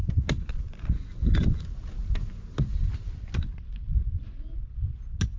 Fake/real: real